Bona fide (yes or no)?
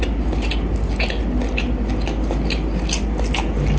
yes